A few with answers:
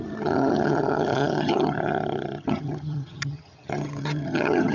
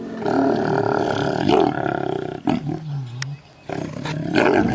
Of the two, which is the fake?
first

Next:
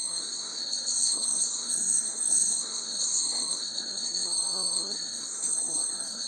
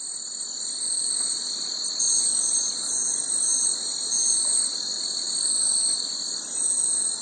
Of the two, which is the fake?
first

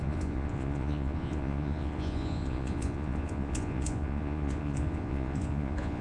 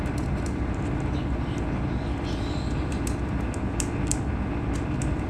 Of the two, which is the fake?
first